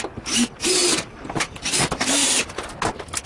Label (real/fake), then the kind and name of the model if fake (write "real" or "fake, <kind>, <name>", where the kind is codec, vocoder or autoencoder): real